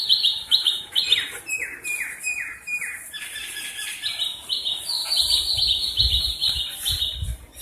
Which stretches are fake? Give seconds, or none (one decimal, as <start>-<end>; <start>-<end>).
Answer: 2.5-3.6; 5.0-5.6; 6.4-7.0